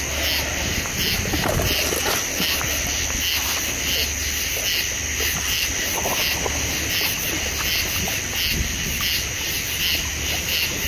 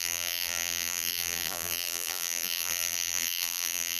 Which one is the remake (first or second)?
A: second